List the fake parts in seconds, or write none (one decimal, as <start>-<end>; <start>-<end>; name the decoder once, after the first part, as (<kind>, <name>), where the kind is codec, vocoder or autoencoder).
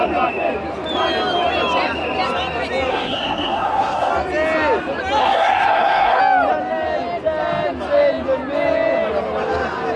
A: 2.9-4.1 (codec, SNAC); 5.2-6.2